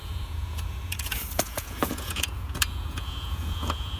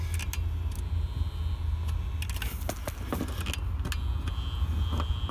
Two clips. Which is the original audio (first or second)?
second